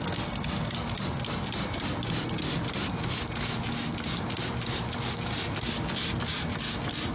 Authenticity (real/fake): real